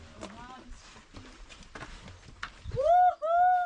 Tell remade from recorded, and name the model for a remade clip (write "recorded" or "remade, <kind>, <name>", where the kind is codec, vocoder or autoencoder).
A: recorded